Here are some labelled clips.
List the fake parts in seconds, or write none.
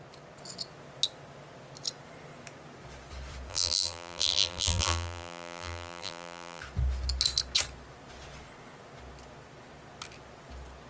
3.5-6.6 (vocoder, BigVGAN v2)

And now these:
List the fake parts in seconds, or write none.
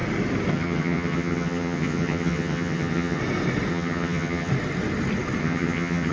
0.5-3.2 (vocoder, HiFi-GAN); 3.7-4.5; 5.4-6.1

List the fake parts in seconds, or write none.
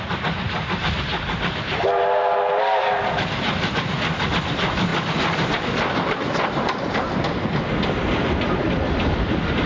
none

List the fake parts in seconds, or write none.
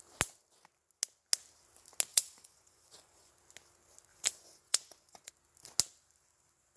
2.1-3.3 (vocoder, Vocos); 4.1-5.3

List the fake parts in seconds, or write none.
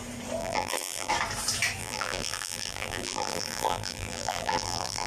0.4-1.1 (vocoder, BigVGAN v2); 1.8-5.1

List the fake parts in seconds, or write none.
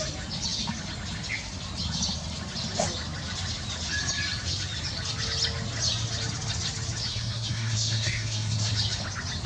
7.1-8.7 (codec, SNAC)